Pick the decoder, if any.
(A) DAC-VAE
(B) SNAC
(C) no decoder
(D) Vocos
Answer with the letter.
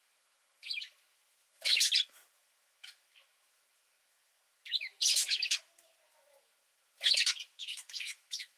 A